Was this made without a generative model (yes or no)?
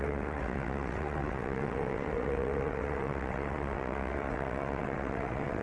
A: no